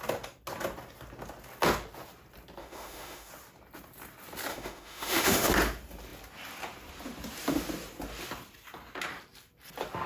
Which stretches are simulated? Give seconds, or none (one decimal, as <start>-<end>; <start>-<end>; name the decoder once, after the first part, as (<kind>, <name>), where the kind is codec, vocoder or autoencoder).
2.6-3.3 (autoencoder, DAC-VAE); 4.5-5.5